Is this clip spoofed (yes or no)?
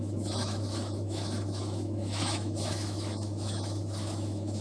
yes